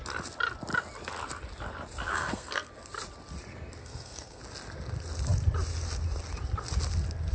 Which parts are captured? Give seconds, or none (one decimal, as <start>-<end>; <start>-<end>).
0.0-2.1; 2.7-3.8; 4.4-7.3